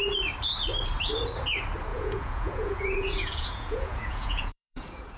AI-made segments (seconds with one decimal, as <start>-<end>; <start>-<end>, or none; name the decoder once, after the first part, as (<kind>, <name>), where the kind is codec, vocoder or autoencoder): 1.9-5.2 (vocoder, Vocos)